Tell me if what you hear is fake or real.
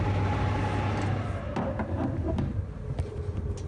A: real